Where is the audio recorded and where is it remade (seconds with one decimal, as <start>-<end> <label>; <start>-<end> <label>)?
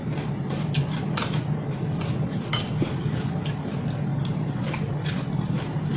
0.0-6.0 recorded